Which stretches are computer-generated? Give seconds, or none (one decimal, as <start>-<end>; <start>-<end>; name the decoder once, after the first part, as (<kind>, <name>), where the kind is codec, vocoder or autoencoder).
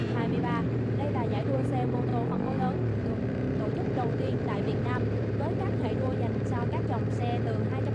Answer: 0.0-2.1 (vocoder, BigVGAN v2); 2.6-7.9